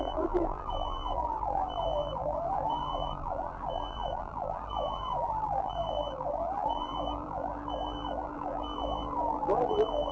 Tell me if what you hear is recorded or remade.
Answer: remade